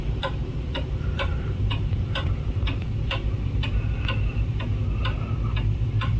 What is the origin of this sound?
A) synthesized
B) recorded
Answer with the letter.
A